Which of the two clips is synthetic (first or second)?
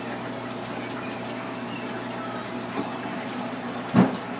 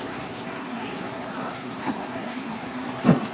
second